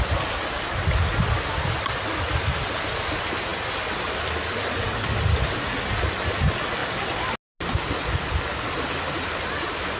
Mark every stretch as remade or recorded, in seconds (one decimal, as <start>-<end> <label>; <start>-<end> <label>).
0.0-10.0 recorded